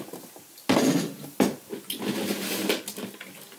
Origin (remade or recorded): recorded